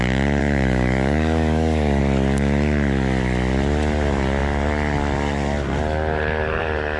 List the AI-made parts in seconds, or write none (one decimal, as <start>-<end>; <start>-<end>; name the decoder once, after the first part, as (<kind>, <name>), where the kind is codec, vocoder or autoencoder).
0.4-2.0 (codec, DAC)